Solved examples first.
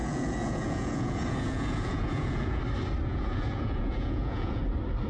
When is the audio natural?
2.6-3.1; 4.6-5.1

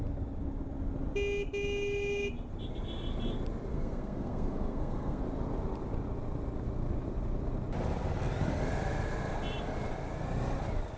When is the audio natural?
0.0-3.7; 5.2-11.0

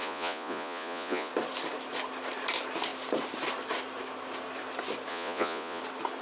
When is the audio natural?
1.3-5.1; 5.8-6.2

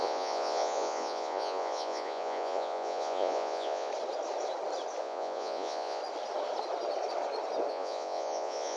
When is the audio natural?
3.9-5.0; 6.0-7.7